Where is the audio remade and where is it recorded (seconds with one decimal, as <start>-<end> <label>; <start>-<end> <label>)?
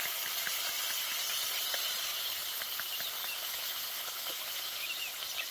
0.0-3.2 recorded; 3.2-5.0 remade; 5.0-5.5 recorded